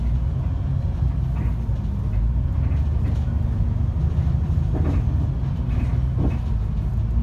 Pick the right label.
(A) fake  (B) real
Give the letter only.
B